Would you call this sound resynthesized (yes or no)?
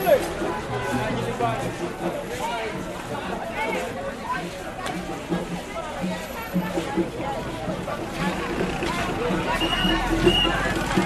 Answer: no